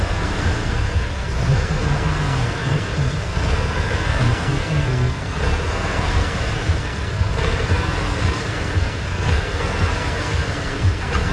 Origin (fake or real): fake